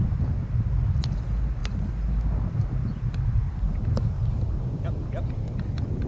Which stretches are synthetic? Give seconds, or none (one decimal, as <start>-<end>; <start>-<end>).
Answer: none